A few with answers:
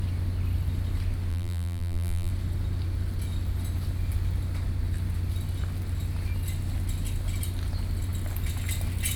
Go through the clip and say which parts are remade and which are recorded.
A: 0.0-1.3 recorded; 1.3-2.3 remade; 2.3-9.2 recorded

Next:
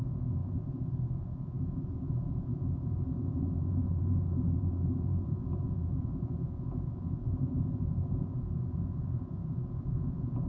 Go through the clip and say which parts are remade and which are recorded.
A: 0.0-10.5 remade

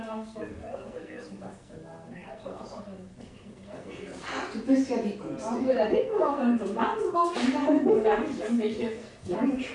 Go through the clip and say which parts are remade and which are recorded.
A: 0.0-4.3 remade; 4.3-5.6 recorded; 5.6-9.7 remade

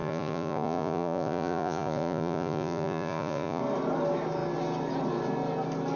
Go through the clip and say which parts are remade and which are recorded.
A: 0.0-3.6 remade; 3.6-6.0 recorded

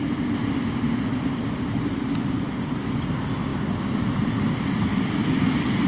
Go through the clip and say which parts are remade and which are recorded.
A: 0.0-5.9 recorded